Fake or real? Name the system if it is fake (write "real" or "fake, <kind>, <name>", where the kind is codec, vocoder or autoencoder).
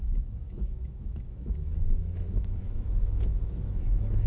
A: fake, autoencoder, DAC-VAE